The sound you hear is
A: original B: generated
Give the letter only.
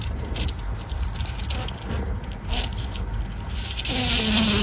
A